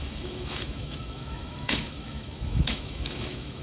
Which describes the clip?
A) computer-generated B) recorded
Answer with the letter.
A